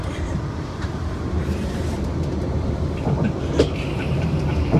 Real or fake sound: fake